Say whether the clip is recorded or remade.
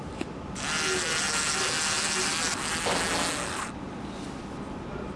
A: recorded